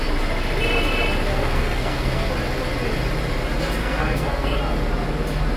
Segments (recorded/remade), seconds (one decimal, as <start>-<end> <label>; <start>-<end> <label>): 0.0-1.3 recorded; 1.3-2.3 remade; 2.3-3.8 recorded; 3.8-4.6 remade; 4.6-5.6 recorded

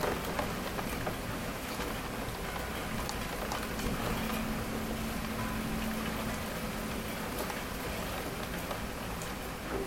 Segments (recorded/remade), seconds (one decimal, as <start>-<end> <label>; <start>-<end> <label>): 0.0-1.4 recorded; 1.4-1.9 remade; 1.9-9.9 recorded

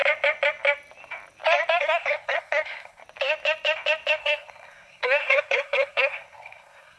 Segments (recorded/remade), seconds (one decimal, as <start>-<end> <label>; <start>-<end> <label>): 0.0-1.8 recorded; 1.8-3.0 remade; 3.0-4.2 recorded; 4.2-7.0 remade

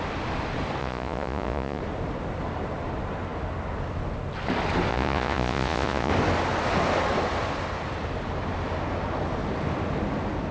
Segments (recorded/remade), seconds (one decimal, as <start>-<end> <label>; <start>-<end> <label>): 0.0-0.8 recorded; 0.8-1.8 remade; 1.8-4.9 recorded; 4.9-6.1 remade; 6.1-10.5 recorded

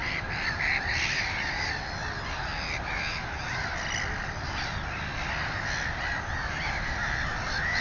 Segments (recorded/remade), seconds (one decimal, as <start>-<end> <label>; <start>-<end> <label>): 0.0-7.8 recorded

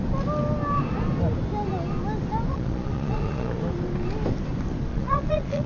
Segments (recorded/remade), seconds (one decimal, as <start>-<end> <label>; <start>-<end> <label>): 0.0-2.5 recorded; 2.5-3.6 remade; 3.6-4.9 recorded; 4.9-5.7 remade